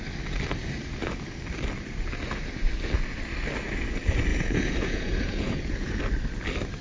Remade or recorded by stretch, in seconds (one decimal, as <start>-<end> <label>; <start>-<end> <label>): 0.0-4.3 recorded; 4.3-6.0 remade; 6.0-6.8 recorded